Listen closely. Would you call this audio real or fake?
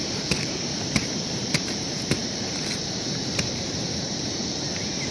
fake